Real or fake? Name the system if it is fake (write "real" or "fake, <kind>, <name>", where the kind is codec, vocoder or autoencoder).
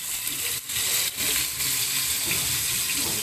real